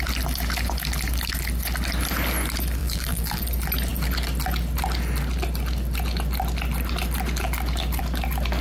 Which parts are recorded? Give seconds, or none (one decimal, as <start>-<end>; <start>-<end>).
0.0-2.8; 3.4-8.6